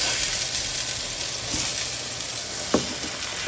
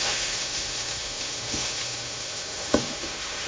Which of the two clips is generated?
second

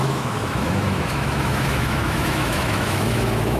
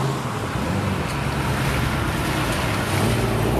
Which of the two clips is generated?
first